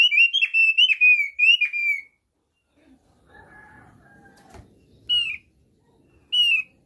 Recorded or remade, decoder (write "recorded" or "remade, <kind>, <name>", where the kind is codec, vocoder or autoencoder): recorded